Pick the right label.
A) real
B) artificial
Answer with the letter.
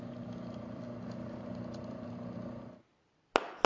A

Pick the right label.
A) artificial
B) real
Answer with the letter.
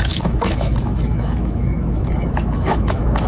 A